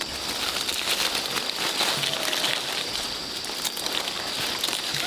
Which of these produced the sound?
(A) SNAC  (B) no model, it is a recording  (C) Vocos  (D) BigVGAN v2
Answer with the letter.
B